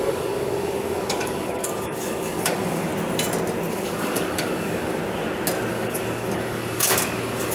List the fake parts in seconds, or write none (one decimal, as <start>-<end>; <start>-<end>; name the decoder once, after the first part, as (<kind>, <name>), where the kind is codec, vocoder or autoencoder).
0.0-2.9 (codec, DAC); 3.7-5.0; 5.7-7.5